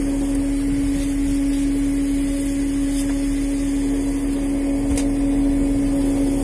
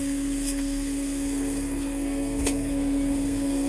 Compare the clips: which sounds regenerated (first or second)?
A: second